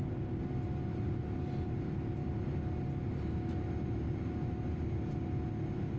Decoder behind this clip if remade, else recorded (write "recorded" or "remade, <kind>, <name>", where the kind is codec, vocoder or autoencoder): recorded